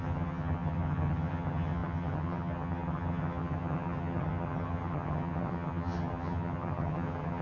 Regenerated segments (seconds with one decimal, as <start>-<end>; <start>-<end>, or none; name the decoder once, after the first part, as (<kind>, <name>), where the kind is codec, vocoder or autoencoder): 0.0-7.4 (vocoder, HiFi-GAN)